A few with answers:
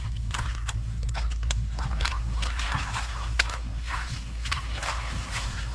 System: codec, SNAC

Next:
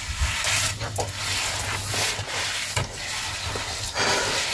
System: none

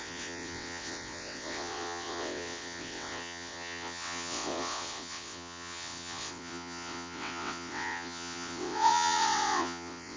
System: vocoder, WaveNeXt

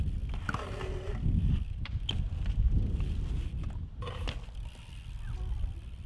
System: none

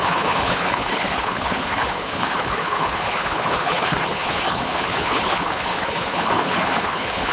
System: codec, HILCodec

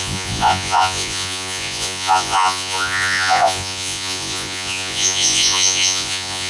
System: vocoder, Vocos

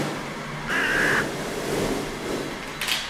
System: none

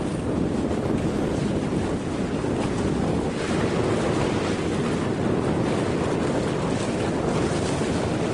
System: none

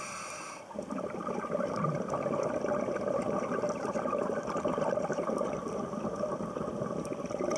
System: none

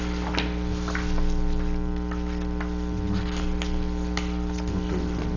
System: none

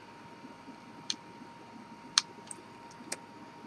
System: none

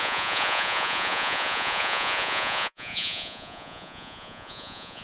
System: vocoder, Vocos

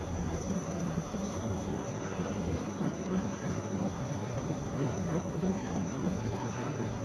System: codec, SNAC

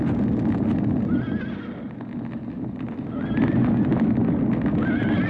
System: none